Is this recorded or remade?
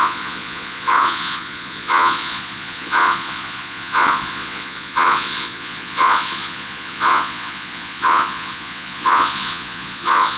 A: remade